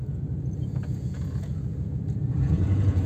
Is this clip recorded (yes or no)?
no